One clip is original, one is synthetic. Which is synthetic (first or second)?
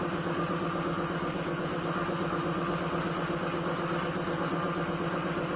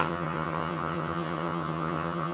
second